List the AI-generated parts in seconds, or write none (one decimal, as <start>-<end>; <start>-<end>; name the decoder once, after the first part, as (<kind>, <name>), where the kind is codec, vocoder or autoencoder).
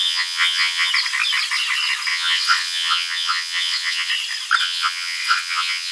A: 0.0-0.9 (vocoder, WaveNeXt); 2.1-4.1; 4.6-5.9